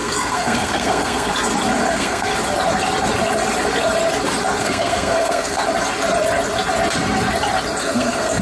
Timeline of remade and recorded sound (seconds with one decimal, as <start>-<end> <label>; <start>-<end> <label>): 0.0-1.3 remade; 1.3-1.9 recorded; 1.9-2.3 remade; 2.3-4.6 recorded; 4.6-5.6 remade; 5.6-7.8 recorded; 7.8-8.4 remade